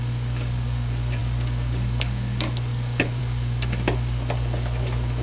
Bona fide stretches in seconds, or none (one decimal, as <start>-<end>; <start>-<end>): none